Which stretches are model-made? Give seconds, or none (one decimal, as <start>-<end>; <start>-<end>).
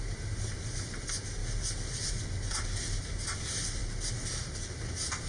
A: none